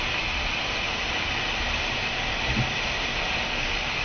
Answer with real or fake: real